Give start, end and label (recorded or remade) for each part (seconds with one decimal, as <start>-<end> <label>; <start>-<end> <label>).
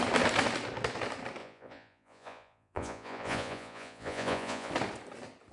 0.0-1.4 recorded; 1.4-4.7 remade; 4.7-5.5 recorded